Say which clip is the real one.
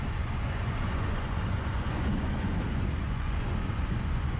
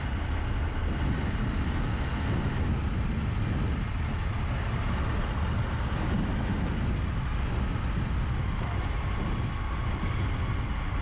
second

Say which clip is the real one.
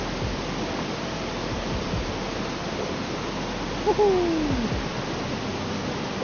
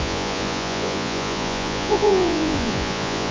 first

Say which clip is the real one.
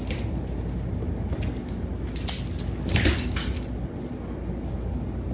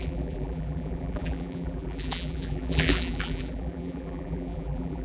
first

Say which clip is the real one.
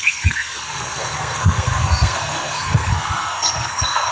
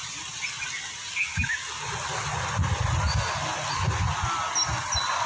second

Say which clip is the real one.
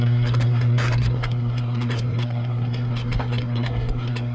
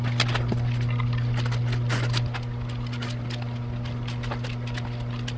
second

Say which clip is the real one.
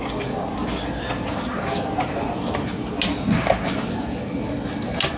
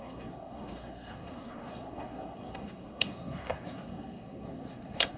first